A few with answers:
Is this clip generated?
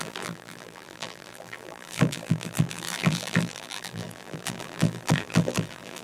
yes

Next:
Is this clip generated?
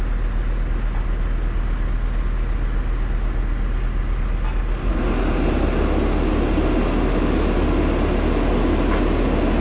no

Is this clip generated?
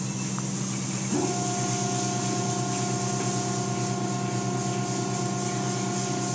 no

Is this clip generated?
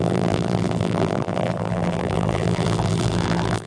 yes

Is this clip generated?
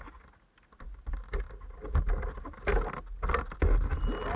no